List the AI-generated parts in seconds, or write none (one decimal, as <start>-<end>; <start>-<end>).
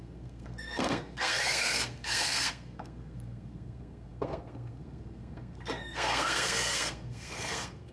0.0-7.9